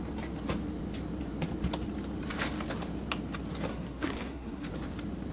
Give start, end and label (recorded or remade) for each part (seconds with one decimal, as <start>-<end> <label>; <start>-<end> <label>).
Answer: 0.0-3.7 recorded; 3.7-4.7 remade; 4.7-5.3 recorded